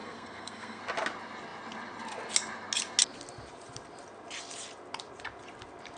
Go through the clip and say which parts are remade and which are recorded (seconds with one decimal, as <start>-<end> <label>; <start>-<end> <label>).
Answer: 0.0-0.8 remade; 0.8-6.0 recorded